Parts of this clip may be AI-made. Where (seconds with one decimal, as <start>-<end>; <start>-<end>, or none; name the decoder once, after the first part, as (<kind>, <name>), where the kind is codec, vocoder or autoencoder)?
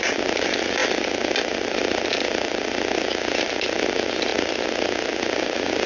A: none